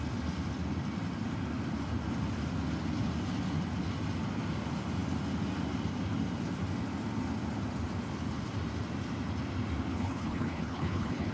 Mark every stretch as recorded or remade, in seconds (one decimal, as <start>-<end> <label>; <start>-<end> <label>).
0.0-9.9 recorded; 9.9-11.3 remade